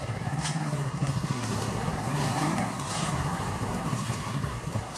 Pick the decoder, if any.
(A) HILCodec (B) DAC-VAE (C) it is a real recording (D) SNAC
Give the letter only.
D